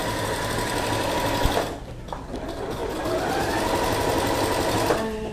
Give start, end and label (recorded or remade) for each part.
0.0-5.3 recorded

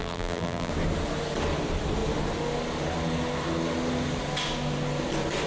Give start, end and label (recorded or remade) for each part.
0.0-0.7 remade; 0.7-5.5 recorded

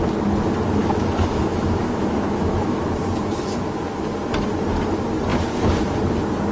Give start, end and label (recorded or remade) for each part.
0.0-0.8 recorded; 0.8-2.8 remade; 2.8-6.5 recorded

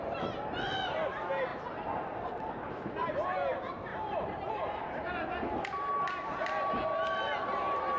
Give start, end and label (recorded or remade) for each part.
0.0-8.0 recorded

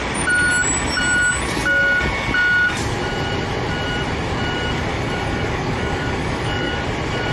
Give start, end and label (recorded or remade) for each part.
0.0-4.9 recorded; 4.9-6.8 remade; 6.8-7.3 recorded